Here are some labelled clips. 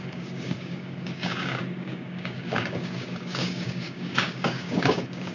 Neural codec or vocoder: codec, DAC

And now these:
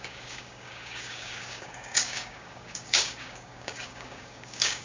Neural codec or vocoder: codec, DAC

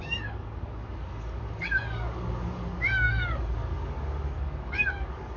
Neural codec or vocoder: codec, DAC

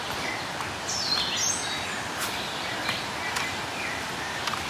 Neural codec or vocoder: none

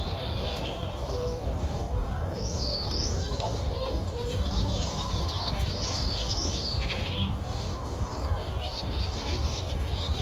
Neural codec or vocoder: codec, DAC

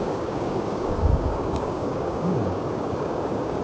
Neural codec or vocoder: codec, DAC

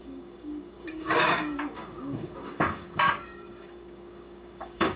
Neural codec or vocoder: codec, DAC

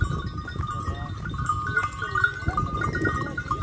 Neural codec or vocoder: none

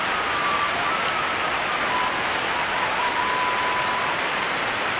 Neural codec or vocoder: none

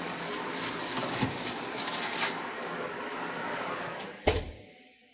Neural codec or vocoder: codec, DAC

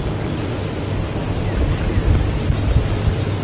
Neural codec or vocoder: none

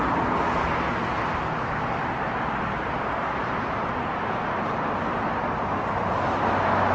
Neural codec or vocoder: none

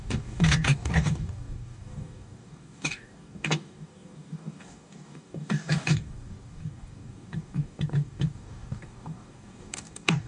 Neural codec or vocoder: codec, DAC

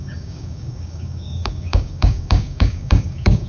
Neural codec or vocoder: codec, DAC